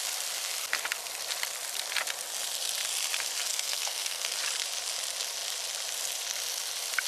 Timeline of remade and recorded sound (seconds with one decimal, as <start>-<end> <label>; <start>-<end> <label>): 0.0-3.5 recorded; 3.5-4.3 remade; 4.3-7.1 recorded